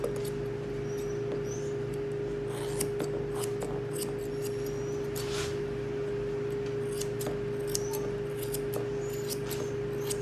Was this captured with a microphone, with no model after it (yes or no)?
yes